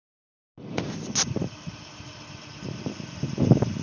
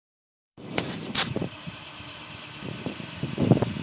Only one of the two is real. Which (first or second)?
first